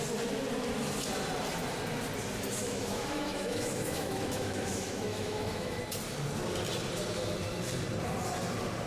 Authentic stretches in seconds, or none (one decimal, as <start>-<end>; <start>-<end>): 0.0-2.6; 5.8-8.9